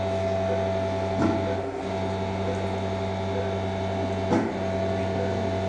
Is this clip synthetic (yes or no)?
no